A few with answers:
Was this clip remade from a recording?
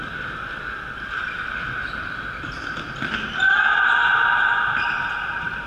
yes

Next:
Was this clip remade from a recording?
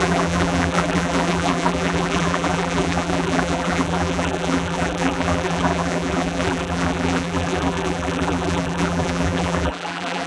yes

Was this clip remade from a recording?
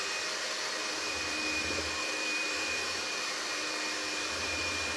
yes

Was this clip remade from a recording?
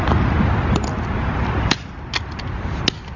no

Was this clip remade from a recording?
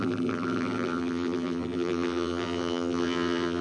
yes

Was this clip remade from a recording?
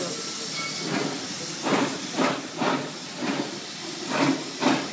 no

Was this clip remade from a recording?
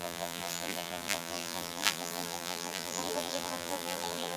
yes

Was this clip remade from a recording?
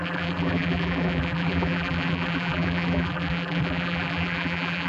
yes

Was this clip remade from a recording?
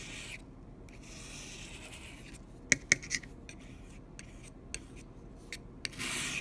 no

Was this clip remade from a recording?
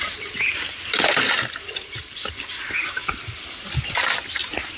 no